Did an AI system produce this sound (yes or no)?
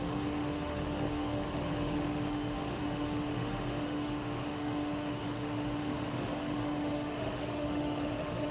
yes